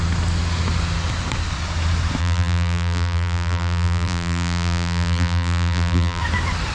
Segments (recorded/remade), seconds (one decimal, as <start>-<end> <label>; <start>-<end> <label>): 0.0-2.2 recorded; 2.2-6.2 remade; 6.2-6.7 recorded